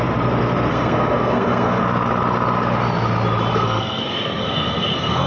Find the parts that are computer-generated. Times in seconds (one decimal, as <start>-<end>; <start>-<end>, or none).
0.7-1.8; 3.5-5.3